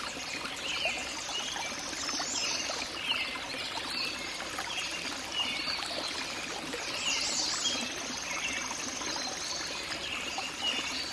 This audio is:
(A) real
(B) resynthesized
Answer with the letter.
A